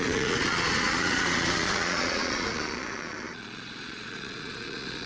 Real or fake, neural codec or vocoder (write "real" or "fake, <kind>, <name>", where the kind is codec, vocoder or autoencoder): fake, vocoder, Vocos